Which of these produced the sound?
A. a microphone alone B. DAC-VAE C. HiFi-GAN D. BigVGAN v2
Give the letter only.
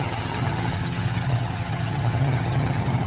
C